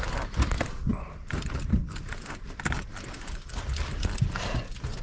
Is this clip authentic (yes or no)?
yes